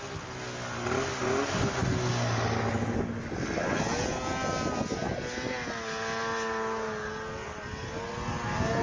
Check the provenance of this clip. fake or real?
real